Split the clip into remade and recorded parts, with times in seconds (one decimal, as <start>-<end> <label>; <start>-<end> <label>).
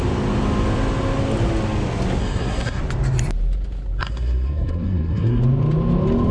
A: 0.0-2.2 recorded; 2.2-2.8 remade; 2.8-4.0 recorded; 4.0-5.4 remade; 5.4-6.3 recorded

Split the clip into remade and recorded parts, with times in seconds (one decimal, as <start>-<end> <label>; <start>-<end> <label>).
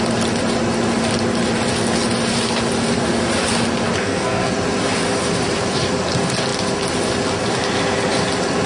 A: 0.0-4.0 recorded; 4.0-4.5 remade; 4.5-8.7 recorded